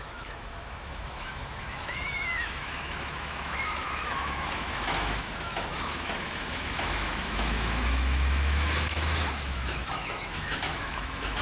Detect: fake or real fake